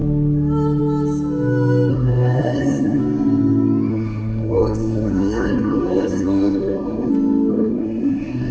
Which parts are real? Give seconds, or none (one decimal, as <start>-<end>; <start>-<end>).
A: 0.0-1.9; 3.0-3.9; 7.1-7.5